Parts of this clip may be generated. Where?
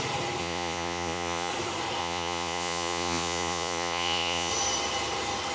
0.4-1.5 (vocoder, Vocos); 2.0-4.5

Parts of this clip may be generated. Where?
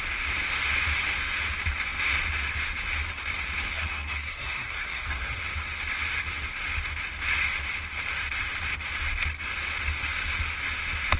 3.7-5.4 (codec, SNAC)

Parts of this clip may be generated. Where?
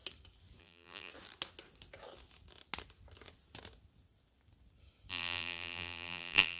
0.6-1.1 (vocoder, BigVGAN v2); 5.1-6.6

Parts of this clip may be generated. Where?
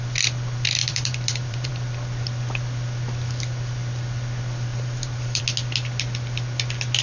0.8-1.7 (vocoder, BigVGAN v2); 4.7-5.4